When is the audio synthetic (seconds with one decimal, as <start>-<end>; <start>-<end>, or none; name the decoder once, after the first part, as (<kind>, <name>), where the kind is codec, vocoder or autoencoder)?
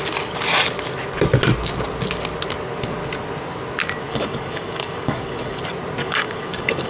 4.1-5.6 (codec, DAC); 6.0-6.9